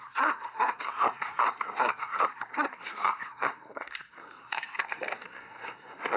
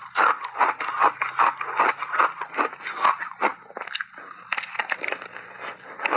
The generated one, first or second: first